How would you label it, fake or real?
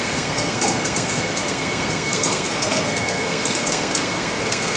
fake